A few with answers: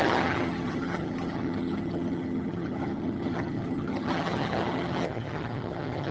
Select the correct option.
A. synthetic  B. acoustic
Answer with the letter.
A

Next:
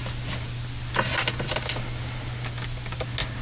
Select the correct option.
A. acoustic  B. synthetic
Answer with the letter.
A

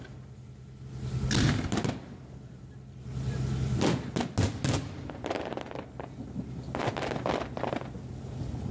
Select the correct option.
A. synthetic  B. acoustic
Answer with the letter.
B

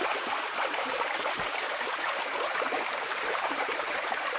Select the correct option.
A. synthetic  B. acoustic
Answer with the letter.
A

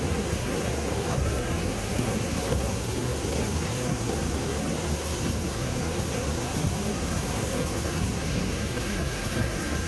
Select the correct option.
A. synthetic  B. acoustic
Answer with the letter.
A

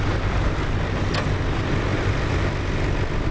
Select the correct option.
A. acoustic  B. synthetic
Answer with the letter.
A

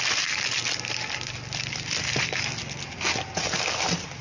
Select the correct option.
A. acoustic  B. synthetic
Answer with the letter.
A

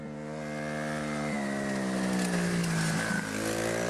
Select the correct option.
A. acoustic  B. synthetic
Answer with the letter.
A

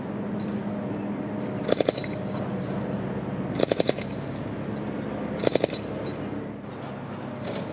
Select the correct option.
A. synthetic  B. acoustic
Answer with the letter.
B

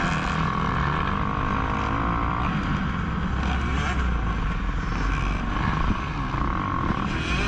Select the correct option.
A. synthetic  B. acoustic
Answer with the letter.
B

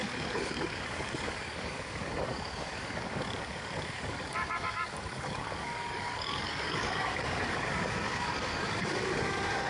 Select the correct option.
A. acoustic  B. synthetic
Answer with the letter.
B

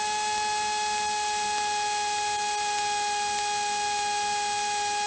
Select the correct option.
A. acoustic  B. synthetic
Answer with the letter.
A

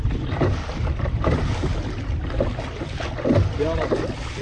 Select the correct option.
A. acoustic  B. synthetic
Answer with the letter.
A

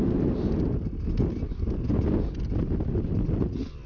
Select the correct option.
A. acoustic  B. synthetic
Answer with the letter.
A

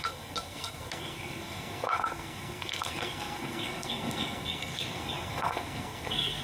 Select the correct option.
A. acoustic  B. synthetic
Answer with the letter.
B